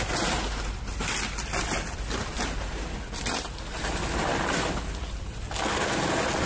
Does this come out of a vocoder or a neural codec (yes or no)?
no